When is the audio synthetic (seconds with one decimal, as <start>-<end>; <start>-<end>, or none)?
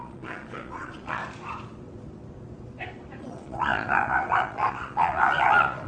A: 0.0-1.2; 3.2-5.9